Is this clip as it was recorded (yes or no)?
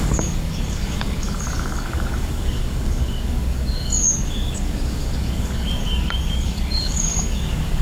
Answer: no